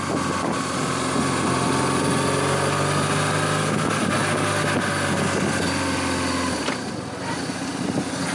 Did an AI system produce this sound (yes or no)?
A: no